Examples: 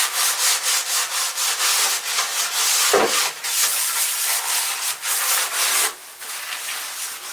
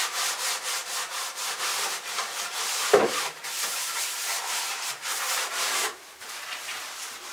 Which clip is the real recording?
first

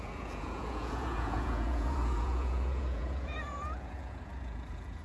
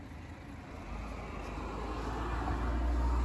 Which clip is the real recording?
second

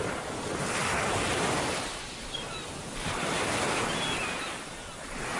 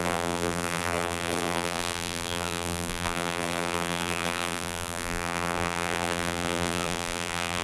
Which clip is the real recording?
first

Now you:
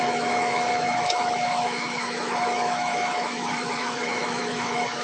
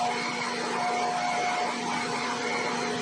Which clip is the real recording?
second